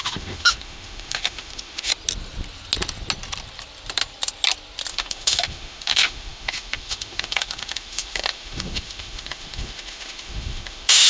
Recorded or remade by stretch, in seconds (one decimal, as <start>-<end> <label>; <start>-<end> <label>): 0.0-1.9 remade; 1.9-4.9 recorded; 4.9-11.1 remade